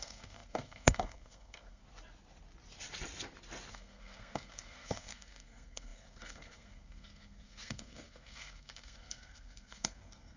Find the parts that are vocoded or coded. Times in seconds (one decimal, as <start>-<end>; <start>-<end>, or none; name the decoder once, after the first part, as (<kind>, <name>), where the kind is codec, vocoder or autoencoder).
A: 0.0-1.8 (codec, SNAC); 3.7-10.4